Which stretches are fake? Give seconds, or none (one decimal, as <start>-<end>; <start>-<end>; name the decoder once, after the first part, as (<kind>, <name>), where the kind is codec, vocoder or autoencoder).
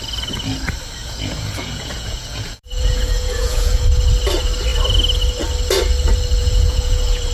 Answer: 1.0-3.8 (vocoder, Vocos); 6.4-7.3